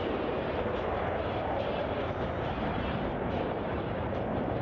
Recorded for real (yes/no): no